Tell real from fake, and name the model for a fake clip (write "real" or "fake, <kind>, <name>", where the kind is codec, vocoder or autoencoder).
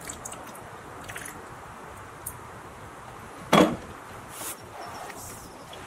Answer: real